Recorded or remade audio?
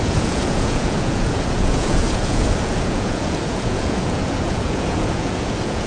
remade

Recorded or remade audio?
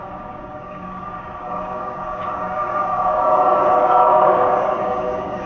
remade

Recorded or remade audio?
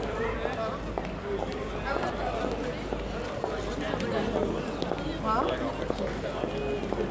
recorded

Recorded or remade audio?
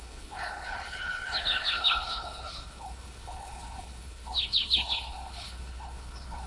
remade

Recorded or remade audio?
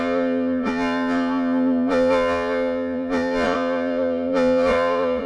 remade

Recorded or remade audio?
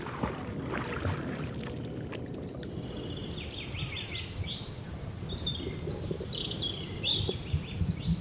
recorded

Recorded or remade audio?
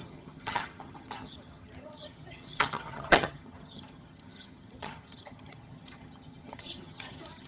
remade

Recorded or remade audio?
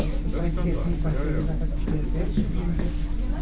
recorded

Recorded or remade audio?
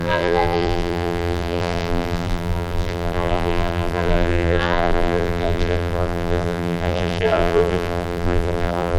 remade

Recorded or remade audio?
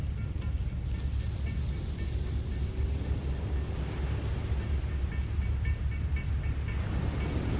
recorded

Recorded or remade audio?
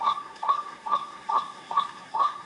remade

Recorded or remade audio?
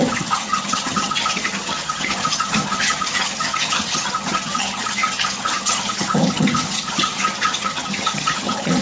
remade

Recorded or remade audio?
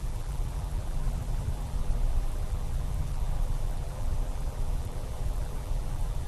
remade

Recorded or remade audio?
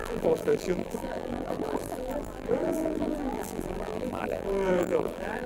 remade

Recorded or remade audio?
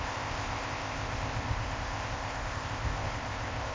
remade